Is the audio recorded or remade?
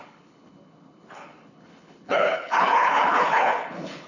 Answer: remade